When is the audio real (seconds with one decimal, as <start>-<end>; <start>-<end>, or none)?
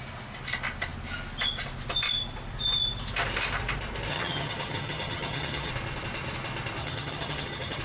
0.0-4.1; 5.7-6.8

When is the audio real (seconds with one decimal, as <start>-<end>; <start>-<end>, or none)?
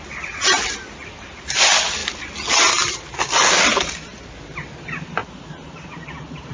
0.0-6.5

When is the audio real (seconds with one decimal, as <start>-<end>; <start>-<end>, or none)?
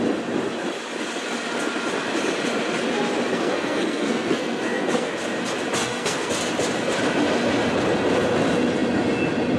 0.0-3.3; 5.2-5.8; 6.3-9.6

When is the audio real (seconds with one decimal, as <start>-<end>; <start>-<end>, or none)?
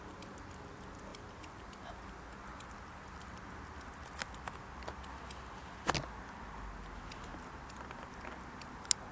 0.0-9.1